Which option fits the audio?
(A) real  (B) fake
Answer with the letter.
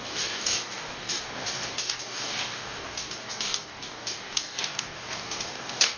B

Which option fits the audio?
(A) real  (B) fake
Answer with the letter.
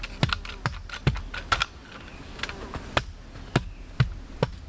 A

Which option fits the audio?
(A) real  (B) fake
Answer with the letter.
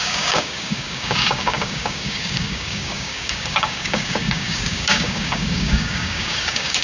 B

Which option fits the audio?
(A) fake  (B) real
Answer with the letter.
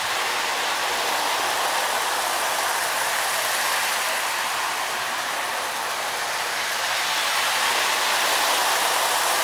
B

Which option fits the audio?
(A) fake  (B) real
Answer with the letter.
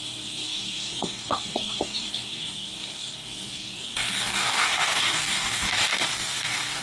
A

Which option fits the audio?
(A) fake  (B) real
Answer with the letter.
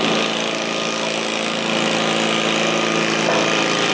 B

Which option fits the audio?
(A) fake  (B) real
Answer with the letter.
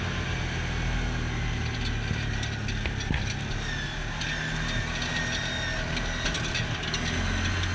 B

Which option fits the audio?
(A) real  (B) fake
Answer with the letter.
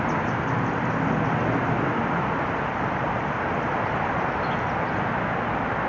A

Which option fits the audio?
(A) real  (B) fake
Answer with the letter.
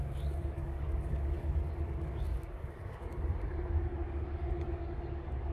B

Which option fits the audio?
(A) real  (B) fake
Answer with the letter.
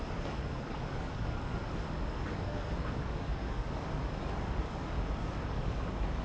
B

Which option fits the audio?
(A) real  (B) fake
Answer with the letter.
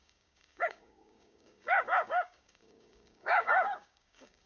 B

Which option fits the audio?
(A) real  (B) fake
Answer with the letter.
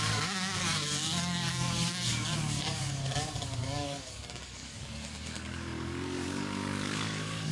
B